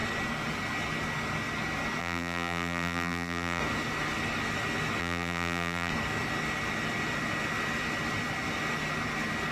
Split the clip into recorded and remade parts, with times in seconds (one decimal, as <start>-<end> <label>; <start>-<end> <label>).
0.0-2.0 recorded; 2.0-3.6 remade; 3.6-5.0 recorded; 5.0-5.9 remade; 5.9-9.5 recorded